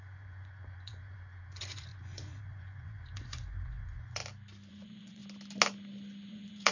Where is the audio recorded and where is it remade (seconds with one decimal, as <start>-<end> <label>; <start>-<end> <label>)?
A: 0.0-4.2 remade; 4.2-4.7 recorded; 4.7-5.2 remade; 5.2-6.3 recorded; 6.3-6.7 remade